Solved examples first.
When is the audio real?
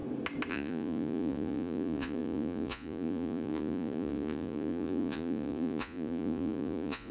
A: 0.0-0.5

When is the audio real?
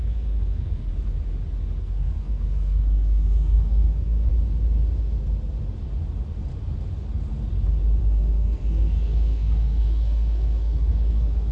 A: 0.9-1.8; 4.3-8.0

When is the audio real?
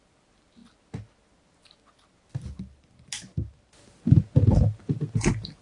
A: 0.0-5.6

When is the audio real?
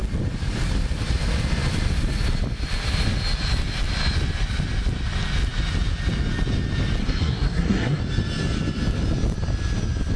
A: 0.0-7.0; 8.0-10.2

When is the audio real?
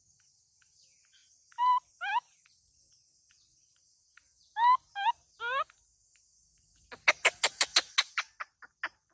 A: 0.0-9.1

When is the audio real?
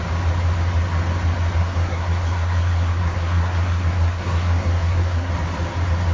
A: 0.0-1.6; 5.3-6.1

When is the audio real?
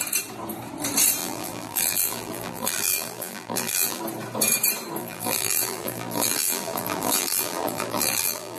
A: 0.0-1.2; 4.0-5.0